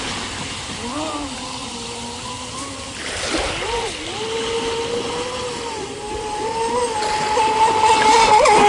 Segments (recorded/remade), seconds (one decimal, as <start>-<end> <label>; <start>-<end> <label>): 0.0-8.7 recorded